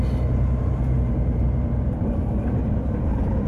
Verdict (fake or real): fake